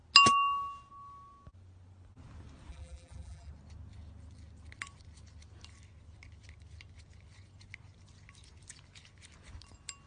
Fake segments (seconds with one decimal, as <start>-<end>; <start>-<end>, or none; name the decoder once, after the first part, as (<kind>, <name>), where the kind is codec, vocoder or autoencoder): 2.7-3.5 (vocoder, BigVGAN v2)